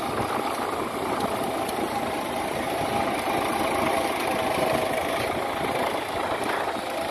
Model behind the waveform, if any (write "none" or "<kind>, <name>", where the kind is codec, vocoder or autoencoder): none